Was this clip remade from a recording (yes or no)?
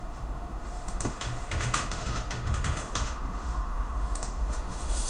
yes